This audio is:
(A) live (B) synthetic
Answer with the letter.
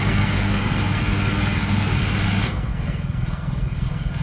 B